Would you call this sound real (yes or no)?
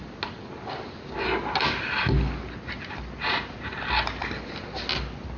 yes